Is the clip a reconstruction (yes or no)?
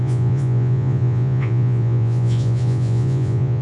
yes